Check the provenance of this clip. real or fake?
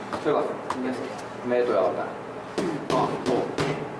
real